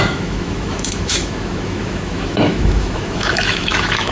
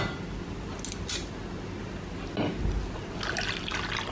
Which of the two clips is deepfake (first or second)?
first